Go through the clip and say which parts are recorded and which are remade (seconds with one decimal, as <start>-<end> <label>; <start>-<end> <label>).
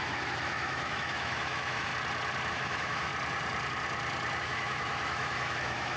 0.0-1.9 remade; 1.9-2.5 recorded; 2.5-3.1 remade; 3.1-4.4 recorded; 4.4-6.0 remade